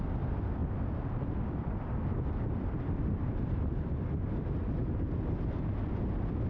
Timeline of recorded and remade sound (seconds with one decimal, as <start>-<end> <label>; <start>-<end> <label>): 0.0-0.6 recorded; 0.6-3.9 remade; 3.9-6.5 recorded